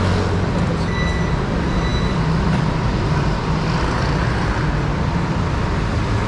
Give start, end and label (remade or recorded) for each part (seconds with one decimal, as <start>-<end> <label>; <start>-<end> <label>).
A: 0.0-6.3 recorded